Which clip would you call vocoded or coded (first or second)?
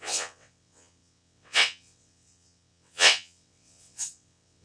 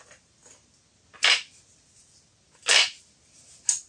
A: first